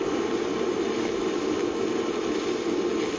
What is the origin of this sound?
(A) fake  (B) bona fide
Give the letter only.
A